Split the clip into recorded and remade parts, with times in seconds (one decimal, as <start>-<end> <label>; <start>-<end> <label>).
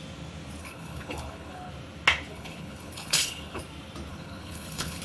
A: 0.0-0.6 recorded; 0.6-1.7 remade; 1.7-2.3 recorded; 2.3-3.6 remade; 3.6-4.1 recorded; 4.1-5.0 remade